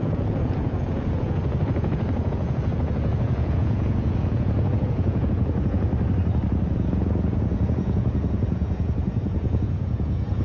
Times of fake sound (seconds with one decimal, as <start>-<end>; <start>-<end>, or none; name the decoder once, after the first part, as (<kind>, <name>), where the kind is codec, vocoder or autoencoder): 0.0-5.9 (vocoder, Vocos); 6.6-10.4

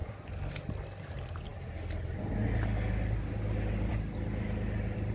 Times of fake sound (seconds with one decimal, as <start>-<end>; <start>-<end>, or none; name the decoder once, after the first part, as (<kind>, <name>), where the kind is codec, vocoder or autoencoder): none

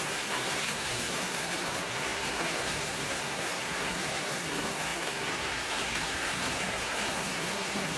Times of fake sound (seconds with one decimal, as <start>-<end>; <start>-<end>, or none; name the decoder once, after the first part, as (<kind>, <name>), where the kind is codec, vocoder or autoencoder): 0.0-8.0 (codec, SNAC)

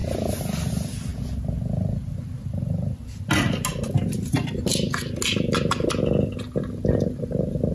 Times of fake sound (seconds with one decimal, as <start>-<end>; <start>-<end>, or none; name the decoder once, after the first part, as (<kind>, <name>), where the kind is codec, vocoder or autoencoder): none

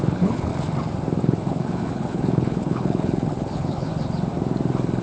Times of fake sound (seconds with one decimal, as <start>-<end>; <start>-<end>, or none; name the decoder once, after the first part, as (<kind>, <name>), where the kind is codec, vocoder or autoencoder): 0.0-0.5 (codec, HILCodec); 1.2-3.9

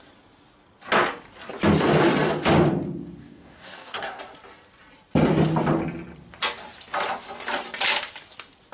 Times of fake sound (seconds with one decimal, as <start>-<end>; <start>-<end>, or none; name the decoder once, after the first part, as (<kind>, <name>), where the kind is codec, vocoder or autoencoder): 3.2-4.2 (codec, DAC)